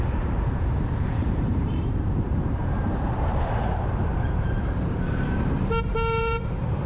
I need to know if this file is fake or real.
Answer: fake